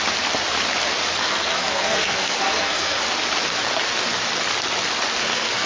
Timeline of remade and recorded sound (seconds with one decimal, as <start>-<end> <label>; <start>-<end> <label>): 0.0-1.2 recorded; 1.2-3.0 remade; 3.0-5.2 recorded; 5.2-5.7 remade